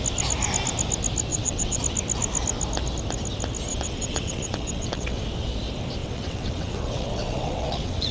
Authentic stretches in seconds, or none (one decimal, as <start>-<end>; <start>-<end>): 0.0-1.3; 1.8-3.7; 5.2-6.0

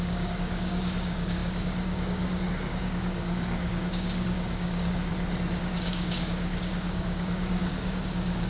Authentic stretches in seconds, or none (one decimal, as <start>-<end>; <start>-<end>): 5.1-5.6

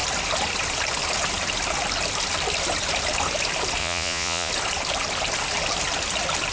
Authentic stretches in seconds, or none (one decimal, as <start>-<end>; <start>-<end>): 0.0-3.8; 4.5-6.5

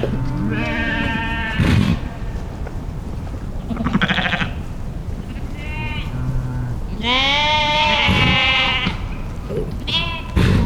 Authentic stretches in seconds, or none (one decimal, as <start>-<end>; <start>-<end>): 0.0-0.5; 1.2-1.9; 3.2-5.0; 6.1-10.7

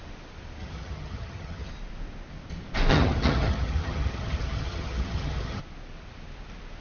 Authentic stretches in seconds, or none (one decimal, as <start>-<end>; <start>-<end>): 0.0-0.6; 1.7-2.9; 5.6-6.8

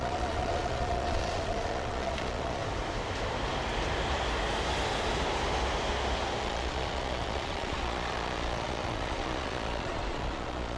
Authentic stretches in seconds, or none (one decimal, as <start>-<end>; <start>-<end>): 2.6-6.4